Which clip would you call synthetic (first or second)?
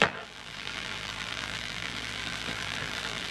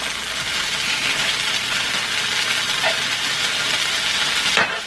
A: first